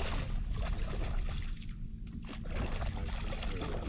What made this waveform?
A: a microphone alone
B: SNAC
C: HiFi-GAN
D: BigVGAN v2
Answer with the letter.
A